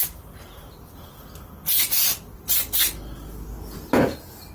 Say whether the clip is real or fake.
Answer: real